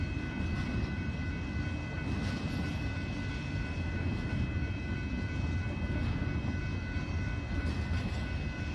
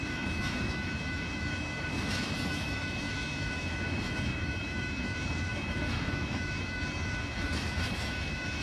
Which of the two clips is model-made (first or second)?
second